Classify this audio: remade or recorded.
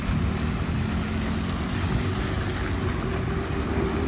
recorded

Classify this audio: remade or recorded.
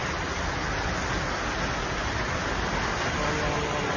recorded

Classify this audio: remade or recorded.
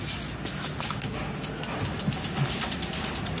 recorded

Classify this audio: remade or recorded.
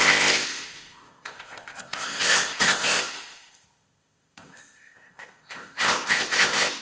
remade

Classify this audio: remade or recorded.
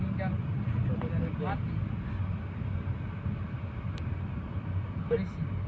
recorded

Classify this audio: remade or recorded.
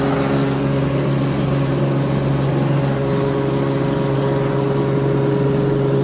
recorded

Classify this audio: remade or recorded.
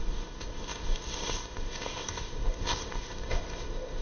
remade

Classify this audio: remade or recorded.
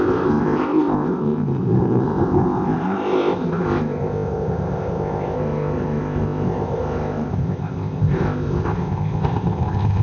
remade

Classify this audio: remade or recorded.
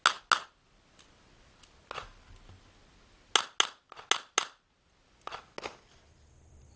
recorded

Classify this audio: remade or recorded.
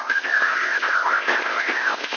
remade